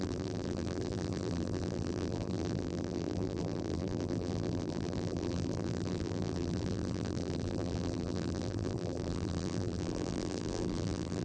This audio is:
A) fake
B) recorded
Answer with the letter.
A